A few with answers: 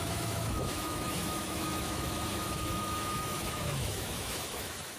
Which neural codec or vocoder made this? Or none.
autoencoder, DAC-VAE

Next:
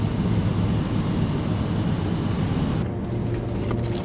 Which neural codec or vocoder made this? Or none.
none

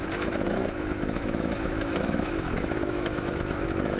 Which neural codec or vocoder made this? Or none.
autoencoder, DAC-VAE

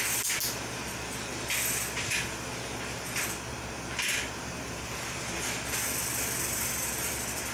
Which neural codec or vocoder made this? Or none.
none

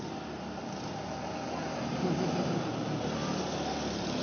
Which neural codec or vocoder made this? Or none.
none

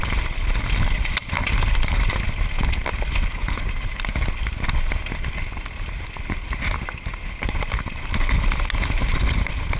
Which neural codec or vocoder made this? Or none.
none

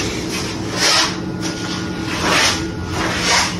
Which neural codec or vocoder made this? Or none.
none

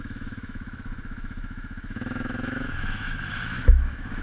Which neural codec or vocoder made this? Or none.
autoencoder, DAC-VAE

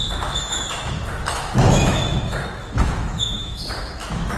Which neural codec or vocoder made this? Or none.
autoencoder, DAC-VAE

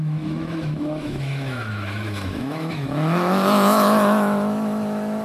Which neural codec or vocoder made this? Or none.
autoencoder, DAC-VAE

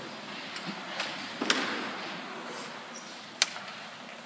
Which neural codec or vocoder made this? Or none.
none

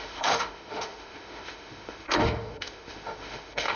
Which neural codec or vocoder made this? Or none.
autoencoder, DAC-VAE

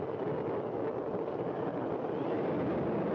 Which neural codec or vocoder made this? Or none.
none